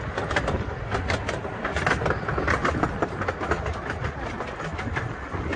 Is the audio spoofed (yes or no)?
no